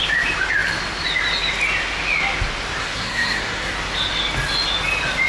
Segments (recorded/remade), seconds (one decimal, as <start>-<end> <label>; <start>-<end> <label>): 0.0-2.8 recorded; 2.8-3.7 remade; 3.7-5.3 recorded